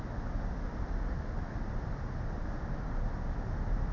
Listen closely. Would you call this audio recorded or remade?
recorded